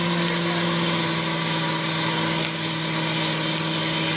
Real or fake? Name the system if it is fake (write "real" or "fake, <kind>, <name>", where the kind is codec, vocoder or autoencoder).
real